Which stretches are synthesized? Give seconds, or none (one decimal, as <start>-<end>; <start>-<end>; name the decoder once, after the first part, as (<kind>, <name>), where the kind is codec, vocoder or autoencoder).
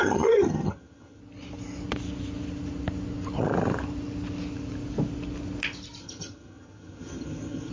0.0-1.2 (vocoder, HiFi-GAN); 6.0-7.7